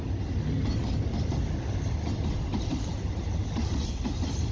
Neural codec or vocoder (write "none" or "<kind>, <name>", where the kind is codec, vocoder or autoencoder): none